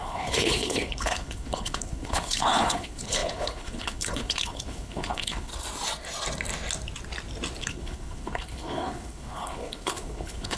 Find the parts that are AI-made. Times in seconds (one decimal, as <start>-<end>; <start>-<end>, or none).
0.0-5.5; 7.6-10.6